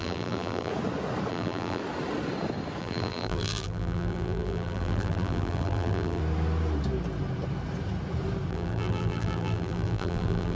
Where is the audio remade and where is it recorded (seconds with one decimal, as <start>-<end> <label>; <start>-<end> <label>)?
0.0-0.7 remade; 0.7-1.3 recorded; 1.3-1.8 remade; 1.8-2.8 recorded; 2.8-6.2 remade; 6.2-8.5 recorded; 8.5-10.6 remade